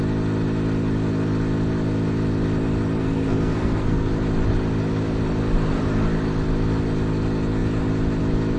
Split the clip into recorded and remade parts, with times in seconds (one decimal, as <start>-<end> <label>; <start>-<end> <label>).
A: 0.0-3.0 recorded; 3.0-4.1 remade; 4.1-8.6 recorded